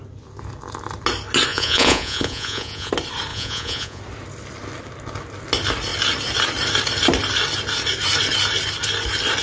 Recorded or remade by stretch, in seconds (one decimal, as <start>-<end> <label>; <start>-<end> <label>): 0.0-1.5 recorded; 1.5-2.9 remade; 2.9-3.3 recorded; 3.3-4.0 remade; 4.0-9.4 recorded